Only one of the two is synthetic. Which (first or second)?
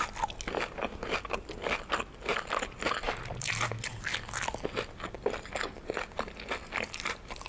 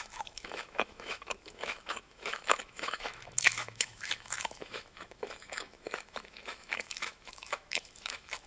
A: second